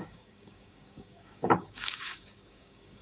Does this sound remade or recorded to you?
remade